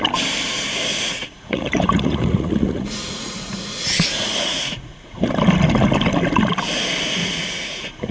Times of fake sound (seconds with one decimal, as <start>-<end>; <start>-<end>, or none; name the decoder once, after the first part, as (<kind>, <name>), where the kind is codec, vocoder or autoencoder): 0.9-5.3 (vocoder, Vocos); 7.2-8.1